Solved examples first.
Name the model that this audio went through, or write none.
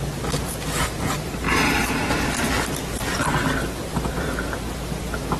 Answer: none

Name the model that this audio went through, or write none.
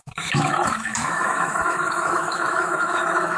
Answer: autoencoder, DAC-VAE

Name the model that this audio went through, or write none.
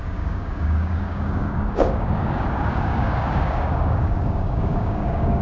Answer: codec, DAC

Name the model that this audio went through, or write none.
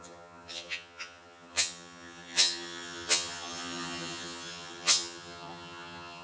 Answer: vocoder, HiFi-GAN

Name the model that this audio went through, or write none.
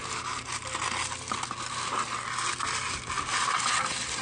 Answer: none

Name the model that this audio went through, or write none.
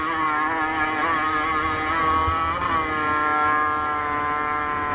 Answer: none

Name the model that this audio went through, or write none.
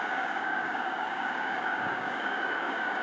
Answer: codec, DAC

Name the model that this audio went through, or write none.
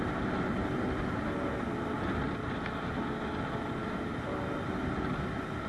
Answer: none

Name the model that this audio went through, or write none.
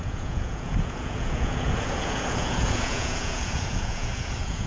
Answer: vocoder, Vocos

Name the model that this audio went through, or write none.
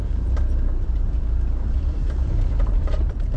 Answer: vocoder, BigVGAN v2